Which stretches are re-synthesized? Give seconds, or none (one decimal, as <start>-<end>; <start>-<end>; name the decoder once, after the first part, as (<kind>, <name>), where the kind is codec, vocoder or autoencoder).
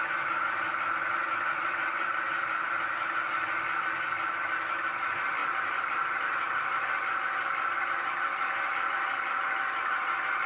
5.4-6.9 (vocoder, BigVGAN v2)